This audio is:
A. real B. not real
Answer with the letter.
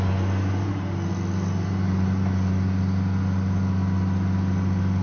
A